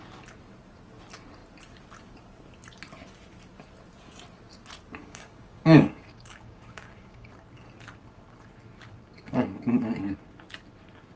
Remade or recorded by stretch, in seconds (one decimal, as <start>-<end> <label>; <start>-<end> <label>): 0.0-5.0 recorded; 5.0-7.3 remade; 7.3-9.1 recorded; 9.1-10.0 remade; 10.0-11.2 recorded